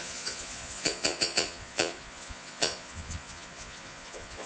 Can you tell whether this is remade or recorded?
remade